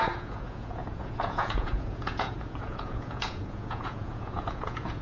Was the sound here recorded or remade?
remade